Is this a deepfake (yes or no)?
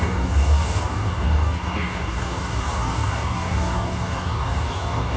yes